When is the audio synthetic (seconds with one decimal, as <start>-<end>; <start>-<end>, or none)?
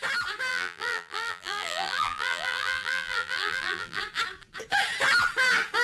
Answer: 0.5-4.0